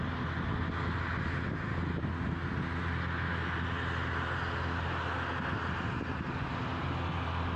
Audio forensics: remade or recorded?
recorded